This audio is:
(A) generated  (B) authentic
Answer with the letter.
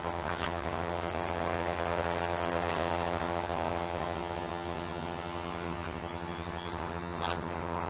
A